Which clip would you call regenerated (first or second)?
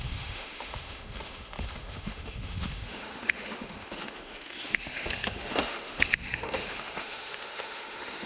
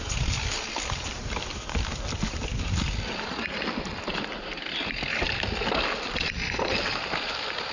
first